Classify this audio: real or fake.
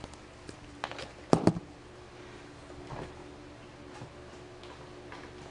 real